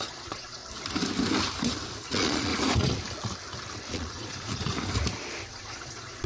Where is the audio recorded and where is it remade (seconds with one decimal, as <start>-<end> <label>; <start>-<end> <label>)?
0.0-0.6 remade; 0.6-2.1 recorded; 2.1-2.5 remade; 2.5-3.9 recorded; 3.9-4.7 remade; 4.7-5.5 recorded; 5.5-6.3 remade